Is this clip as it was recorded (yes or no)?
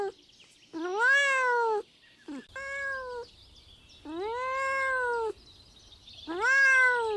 yes